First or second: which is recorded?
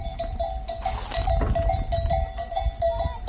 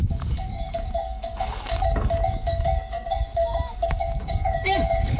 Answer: first